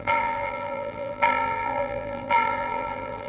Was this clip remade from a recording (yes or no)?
yes